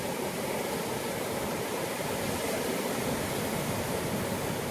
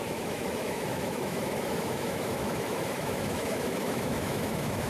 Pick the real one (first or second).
first